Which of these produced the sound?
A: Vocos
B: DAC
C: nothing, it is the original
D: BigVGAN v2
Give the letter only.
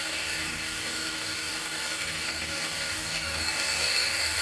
B